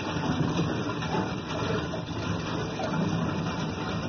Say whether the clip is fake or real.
fake